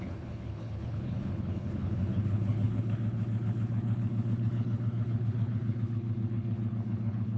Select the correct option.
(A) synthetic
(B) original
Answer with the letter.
A